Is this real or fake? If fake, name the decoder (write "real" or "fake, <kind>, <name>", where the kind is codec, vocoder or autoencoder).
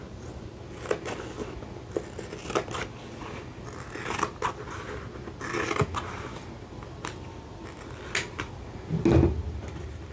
real